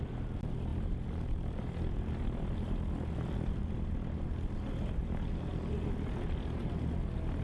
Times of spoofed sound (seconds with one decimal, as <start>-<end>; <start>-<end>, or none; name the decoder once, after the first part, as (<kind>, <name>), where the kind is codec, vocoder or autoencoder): none